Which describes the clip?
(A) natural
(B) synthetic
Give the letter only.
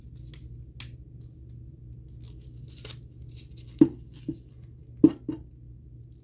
A